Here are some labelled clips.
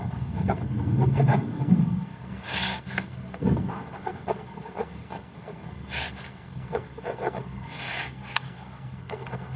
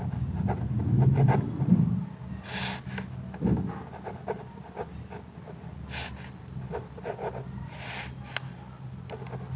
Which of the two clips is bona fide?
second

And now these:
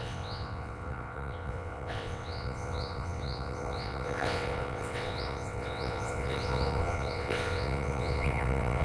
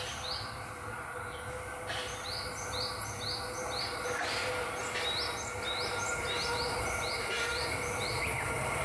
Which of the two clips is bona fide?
second